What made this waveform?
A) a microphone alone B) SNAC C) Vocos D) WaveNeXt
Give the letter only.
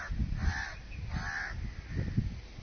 A